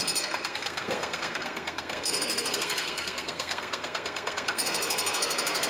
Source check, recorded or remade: remade